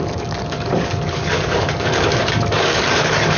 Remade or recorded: remade